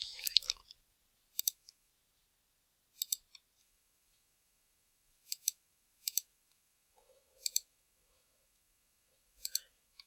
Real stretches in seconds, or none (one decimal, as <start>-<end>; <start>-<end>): 0.6-1.4; 1.9-3.6